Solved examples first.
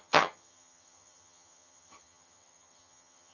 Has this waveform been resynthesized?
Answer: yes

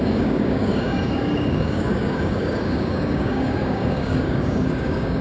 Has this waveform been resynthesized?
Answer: yes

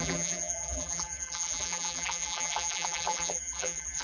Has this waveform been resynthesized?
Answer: yes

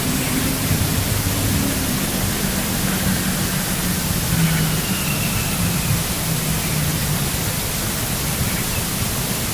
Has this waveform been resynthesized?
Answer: no